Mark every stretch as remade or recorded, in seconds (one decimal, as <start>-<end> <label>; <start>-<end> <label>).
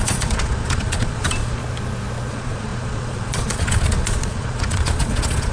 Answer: 0.0-1.6 remade; 1.6-2.3 recorded; 2.3-5.5 remade